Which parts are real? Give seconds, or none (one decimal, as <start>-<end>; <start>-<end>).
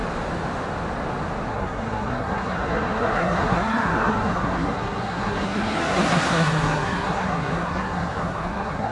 0.0-1.5